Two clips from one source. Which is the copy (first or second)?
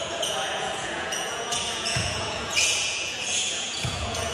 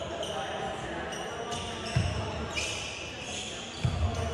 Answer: first